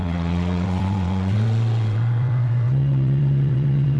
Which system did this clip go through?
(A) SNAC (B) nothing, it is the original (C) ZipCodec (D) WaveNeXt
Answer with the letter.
D